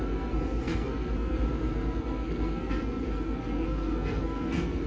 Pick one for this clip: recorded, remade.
remade